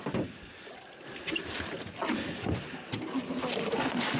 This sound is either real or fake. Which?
real